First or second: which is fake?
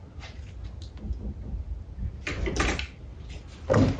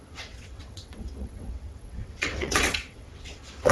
second